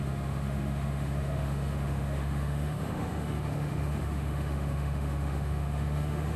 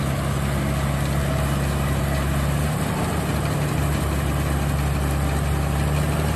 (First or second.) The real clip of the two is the second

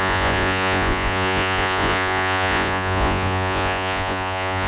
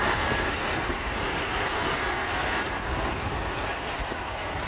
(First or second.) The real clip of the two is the second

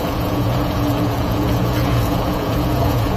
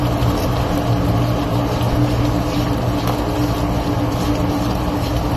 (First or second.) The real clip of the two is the second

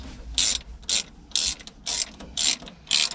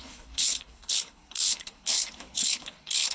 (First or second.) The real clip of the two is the first